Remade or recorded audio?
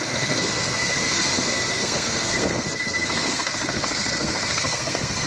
remade